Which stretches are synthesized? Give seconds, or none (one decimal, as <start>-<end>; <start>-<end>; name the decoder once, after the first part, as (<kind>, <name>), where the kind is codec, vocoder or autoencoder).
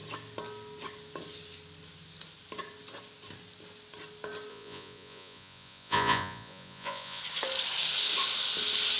4.5-7.2 (vocoder, Vocos)